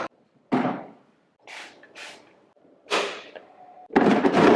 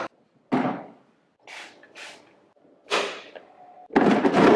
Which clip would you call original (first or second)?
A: second